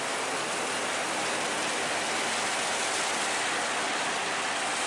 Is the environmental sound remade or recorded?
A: recorded